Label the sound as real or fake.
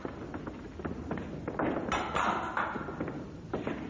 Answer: real